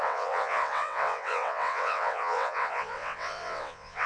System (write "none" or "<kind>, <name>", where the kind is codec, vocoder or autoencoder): vocoder, WaveNeXt